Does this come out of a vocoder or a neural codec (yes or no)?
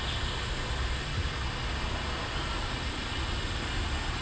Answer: no